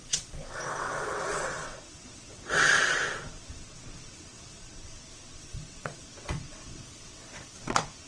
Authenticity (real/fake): fake